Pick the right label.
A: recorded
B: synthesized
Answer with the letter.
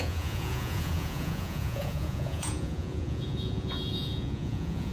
B